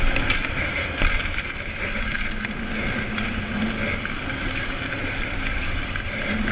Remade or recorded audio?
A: recorded